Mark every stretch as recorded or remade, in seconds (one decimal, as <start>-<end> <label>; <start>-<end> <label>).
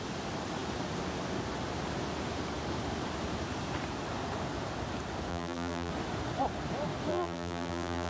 0.0-5.3 recorded; 5.3-5.9 remade; 5.9-7.1 recorded; 7.1-8.1 remade